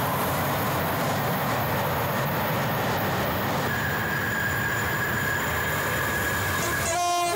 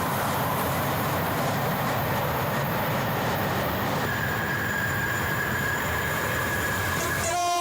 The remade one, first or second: second